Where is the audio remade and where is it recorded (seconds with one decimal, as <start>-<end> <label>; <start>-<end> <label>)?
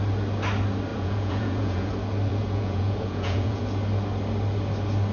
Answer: 0.0-0.9 recorded; 0.9-1.9 remade; 1.9-2.3 recorded; 2.3-3.6 remade; 3.6-5.1 recorded